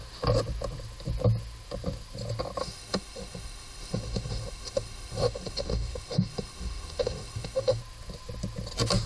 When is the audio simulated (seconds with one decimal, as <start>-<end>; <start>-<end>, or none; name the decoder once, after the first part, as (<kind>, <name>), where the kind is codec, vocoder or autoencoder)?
2.6-7.8 (autoencoder, DAC-VAE)